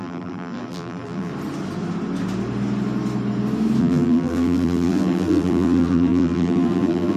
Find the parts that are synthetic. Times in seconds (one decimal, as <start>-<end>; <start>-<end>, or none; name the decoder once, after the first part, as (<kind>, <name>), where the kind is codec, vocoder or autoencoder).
0.0-1.3 (vocoder, BigVGAN v2); 3.8-7.2